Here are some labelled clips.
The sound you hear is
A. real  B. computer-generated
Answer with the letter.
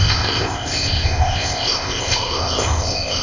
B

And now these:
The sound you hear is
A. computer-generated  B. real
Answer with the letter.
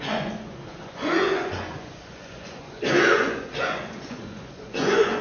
A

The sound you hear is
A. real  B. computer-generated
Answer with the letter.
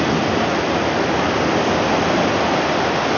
A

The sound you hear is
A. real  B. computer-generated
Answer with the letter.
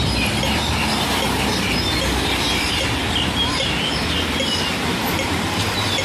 A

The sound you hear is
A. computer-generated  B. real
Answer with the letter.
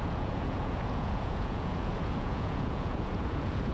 A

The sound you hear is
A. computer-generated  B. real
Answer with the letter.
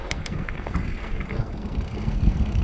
A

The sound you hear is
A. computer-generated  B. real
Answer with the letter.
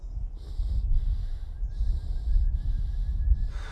B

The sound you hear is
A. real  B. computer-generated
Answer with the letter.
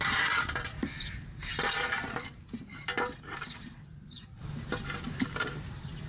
B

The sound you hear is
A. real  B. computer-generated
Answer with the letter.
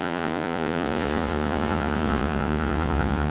B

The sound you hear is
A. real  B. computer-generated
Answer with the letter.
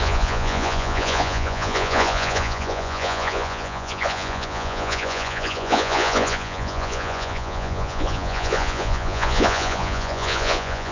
B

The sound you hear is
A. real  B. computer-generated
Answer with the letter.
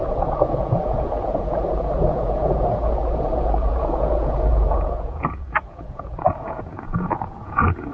B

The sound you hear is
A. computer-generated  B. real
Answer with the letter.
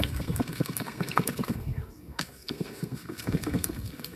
A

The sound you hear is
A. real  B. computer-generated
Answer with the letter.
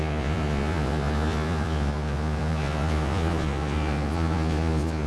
B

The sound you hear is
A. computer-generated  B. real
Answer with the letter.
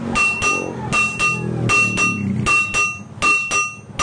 B